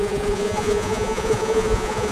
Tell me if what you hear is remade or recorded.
remade